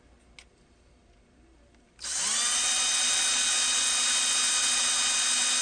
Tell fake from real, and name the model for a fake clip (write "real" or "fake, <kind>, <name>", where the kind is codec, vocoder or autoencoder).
real